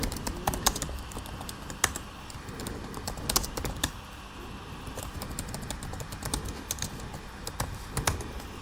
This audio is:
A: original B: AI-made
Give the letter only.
A